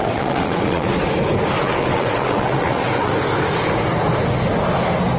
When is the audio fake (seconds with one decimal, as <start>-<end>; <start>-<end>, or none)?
0.0-0.9; 1.6-3.1